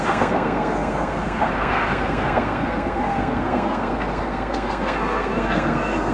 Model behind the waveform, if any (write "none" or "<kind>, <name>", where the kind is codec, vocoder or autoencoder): codec, SNAC